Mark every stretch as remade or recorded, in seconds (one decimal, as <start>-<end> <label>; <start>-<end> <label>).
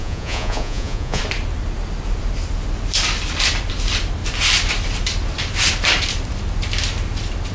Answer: 0.0-1.2 remade; 1.2-7.5 recorded